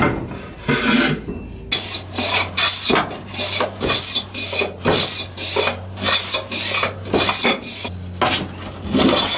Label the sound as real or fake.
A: real